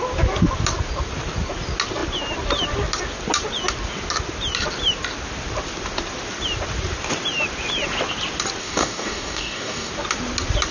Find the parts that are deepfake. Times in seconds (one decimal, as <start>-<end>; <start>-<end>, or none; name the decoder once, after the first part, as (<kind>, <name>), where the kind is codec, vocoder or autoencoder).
8.6-9.9 (codec, DAC)